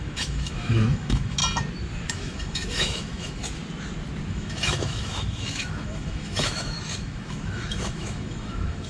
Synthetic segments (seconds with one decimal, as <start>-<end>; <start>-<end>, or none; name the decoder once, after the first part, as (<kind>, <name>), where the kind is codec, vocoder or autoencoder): 0.0-1.4 (autoencoder, DAC-VAE); 2.1-3.4; 4.3-8.9